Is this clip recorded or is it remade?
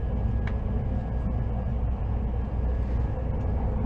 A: recorded